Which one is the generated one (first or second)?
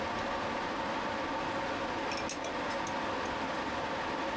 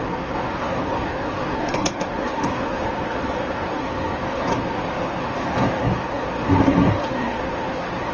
second